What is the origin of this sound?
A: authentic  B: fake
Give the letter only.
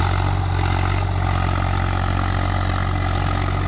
A